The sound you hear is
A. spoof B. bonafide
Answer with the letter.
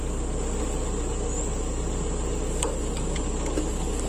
B